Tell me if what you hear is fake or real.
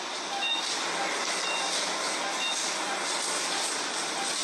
real